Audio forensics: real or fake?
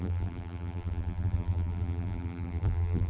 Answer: fake